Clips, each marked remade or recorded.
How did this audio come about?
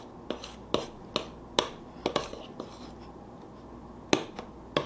recorded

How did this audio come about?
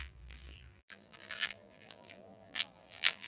remade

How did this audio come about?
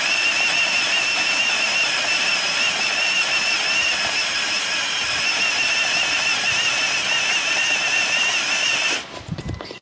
remade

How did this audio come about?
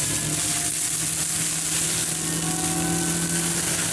recorded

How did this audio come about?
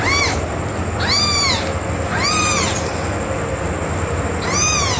recorded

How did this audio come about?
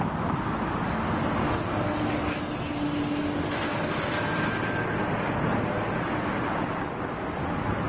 recorded